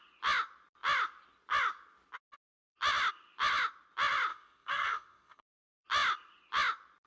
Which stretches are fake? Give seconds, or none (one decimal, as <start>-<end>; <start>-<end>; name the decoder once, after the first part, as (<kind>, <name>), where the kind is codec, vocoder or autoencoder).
4.3-5.5 (codec, SNAC)